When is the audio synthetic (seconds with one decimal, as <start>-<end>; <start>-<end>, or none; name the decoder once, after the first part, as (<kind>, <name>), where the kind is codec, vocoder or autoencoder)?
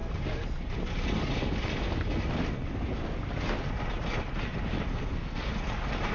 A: 4.9-5.5 (codec, SNAC)